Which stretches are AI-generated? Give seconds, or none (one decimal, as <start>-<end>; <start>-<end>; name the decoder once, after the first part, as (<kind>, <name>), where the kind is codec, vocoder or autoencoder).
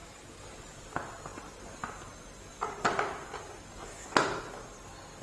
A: none